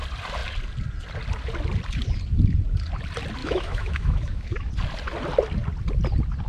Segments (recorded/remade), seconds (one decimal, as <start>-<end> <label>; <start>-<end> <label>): 0.0-3.4 recorded; 3.4-4.7 remade; 4.7-6.5 recorded